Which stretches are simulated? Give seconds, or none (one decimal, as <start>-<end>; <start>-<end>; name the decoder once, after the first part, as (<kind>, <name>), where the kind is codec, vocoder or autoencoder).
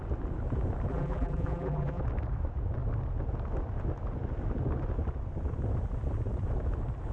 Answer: 0.9-2.0 (vocoder, BigVGAN v2)